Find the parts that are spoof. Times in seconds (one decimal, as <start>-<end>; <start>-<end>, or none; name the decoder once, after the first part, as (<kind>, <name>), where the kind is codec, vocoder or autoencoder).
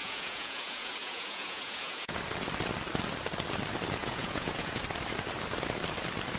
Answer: 0.0-2.2 (vocoder, Vocos); 4.0-4.8